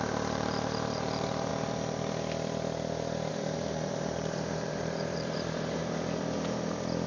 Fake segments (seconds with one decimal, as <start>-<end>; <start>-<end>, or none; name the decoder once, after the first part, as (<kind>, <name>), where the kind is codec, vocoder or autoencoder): 0.0-1.5 (vocoder, BigVGAN v2); 3.3-5.8